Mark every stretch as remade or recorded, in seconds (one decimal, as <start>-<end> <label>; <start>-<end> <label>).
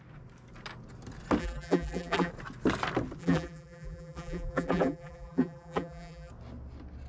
0.0-1.4 recorded; 1.4-2.3 remade; 2.3-3.2 recorded; 3.2-6.3 remade; 6.3-7.1 recorded